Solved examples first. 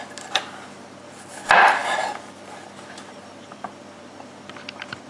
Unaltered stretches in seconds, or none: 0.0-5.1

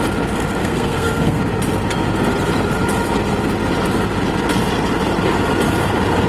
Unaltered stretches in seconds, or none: 0.0-0.6; 1.4-6.3

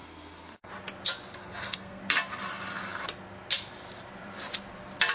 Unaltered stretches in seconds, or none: 0.7-1.4; 2.0-5.1